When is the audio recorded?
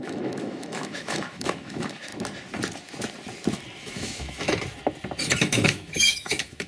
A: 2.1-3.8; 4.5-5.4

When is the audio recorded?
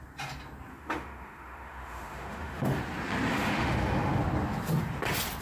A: 0.0-0.7; 2.8-3.3; 4.2-5.4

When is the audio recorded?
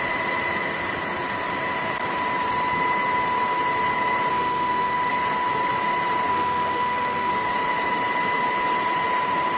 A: 0.0-4.3; 5.1-6.3; 7.3-9.6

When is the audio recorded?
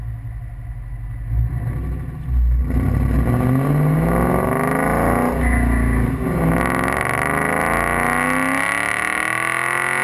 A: 0.0-10.0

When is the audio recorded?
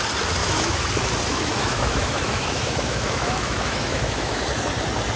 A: 0.0-0.4; 0.9-1.3; 4.4-5.2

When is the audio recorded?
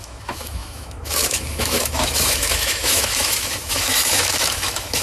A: none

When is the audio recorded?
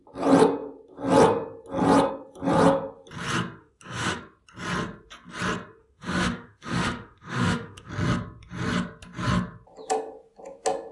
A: 0.0-3.6; 4.2-5.8; 7.9-10.9